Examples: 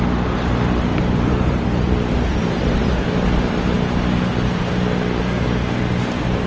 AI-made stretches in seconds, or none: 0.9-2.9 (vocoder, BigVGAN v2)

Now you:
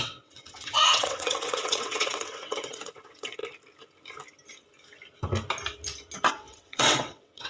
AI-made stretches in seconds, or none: 0.0-3.4 (vocoder, WaveNeXt); 6.3-7.5